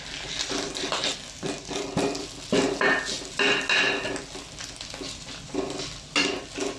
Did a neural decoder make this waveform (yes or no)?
no